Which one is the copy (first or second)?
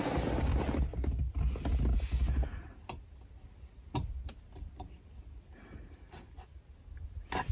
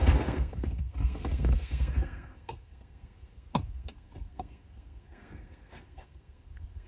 second